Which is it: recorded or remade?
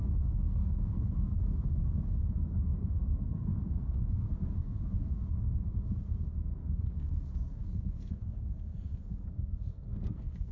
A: remade